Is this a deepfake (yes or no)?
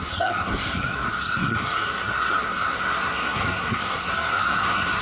yes